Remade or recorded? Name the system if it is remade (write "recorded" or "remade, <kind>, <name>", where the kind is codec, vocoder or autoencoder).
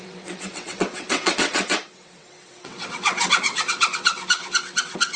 remade, vocoder, WaveNeXt